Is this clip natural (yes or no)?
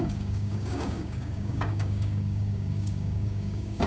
no